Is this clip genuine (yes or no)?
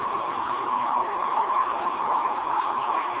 no